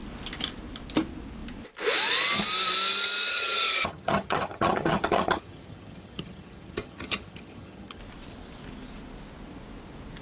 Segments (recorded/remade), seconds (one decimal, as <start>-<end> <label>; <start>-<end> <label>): 0.0-3.3 recorded; 3.3-8.0 remade; 8.0-10.2 recorded